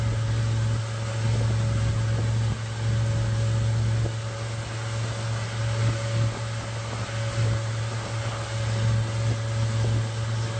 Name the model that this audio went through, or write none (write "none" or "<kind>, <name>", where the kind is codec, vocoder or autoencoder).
none